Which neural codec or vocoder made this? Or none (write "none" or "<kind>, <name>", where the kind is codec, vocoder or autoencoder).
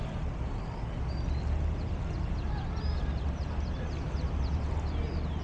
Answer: none